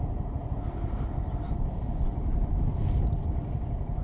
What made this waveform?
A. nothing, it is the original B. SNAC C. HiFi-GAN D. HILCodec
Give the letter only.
A